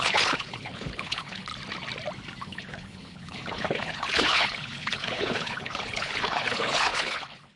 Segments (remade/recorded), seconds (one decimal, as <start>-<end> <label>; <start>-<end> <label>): 0.0-1.5 remade; 1.5-2.4 recorded; 2.4-7.6 remade